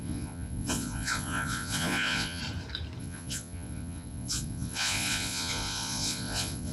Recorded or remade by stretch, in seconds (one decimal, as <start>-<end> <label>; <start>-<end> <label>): 0.0-2.4 remade; 2.4-3.0 recorded; 3.0-6.7 remade